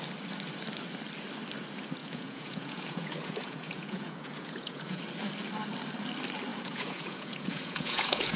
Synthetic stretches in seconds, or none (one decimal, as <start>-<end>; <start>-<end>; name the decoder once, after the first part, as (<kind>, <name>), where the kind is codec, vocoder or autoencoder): 2.0-5.0 (vocoder, Vocos); 6.5-8.4